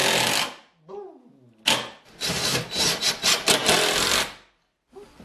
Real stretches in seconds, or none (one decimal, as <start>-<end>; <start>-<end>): 0.0-5.2